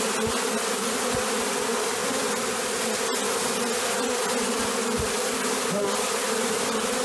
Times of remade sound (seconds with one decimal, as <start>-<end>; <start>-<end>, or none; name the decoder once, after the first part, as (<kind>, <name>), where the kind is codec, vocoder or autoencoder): none